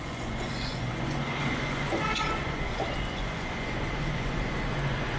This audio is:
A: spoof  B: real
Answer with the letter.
A